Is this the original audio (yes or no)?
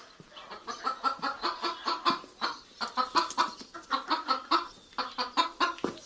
yes